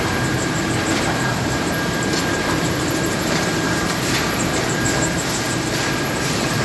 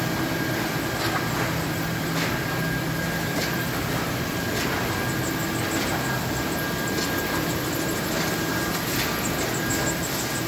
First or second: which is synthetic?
first